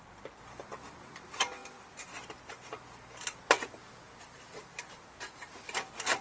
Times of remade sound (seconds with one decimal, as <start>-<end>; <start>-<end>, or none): none